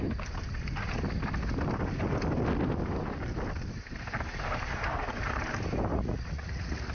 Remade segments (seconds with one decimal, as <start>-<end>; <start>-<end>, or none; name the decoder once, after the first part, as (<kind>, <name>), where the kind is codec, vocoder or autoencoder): 5.9-6.9 (vocoder, Vocos)